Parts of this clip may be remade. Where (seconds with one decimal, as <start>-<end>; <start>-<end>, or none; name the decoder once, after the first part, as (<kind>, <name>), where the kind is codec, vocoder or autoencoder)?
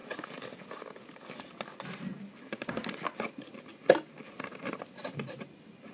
none